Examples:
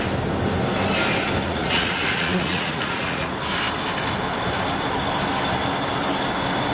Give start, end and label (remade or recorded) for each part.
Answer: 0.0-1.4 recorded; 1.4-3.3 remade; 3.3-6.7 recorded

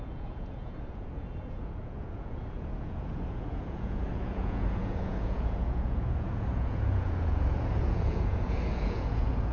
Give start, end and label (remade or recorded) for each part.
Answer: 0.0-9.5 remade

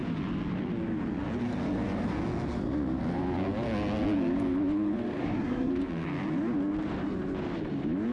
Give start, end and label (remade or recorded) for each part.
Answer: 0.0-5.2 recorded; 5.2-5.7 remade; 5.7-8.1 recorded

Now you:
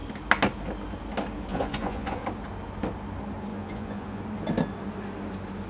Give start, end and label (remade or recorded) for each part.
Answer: 0.0-1.5 recorded; 1.5-2.2 remade; 2.2-3.5 recorded; 3.5-4.2 remade; 4.2-5.7 recorded